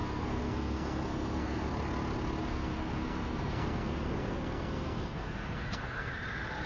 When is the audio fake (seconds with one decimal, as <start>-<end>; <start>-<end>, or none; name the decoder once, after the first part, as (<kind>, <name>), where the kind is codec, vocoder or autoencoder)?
0.0-1.7 (codec, SNAC); 2.4-6.1